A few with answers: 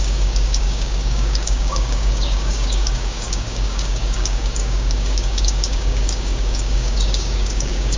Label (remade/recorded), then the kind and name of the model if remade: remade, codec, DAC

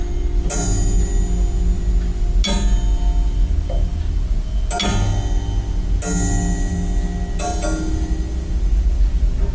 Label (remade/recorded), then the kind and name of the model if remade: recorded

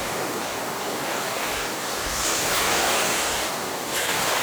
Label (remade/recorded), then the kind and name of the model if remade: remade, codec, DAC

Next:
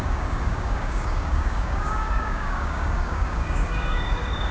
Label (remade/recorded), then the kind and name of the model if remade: remade, codec, DAC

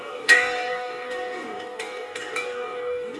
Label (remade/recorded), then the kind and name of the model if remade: remade, codec, DAC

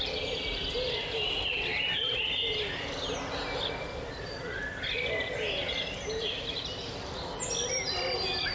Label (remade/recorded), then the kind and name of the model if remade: recorded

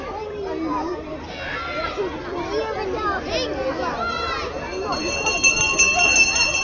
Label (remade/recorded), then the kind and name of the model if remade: recorded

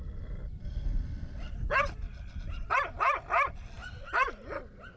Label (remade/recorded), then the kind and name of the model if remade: recorded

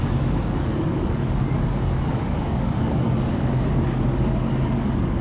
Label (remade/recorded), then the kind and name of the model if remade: remade, codec, DAC